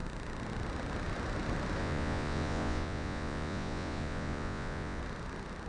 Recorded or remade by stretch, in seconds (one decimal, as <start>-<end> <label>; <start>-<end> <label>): 0.0-1.8 recorded; 1.8-5.0 remade; 5.0-5.7 recorded